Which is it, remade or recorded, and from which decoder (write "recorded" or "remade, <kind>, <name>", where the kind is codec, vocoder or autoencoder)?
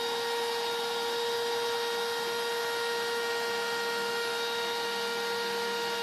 recorded